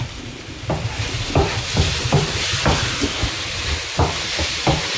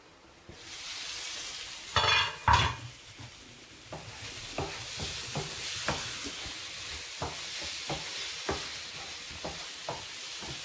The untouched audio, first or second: second